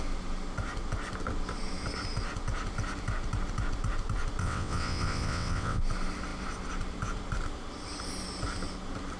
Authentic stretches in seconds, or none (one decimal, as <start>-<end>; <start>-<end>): 0.0-4.4; 5.8-9.2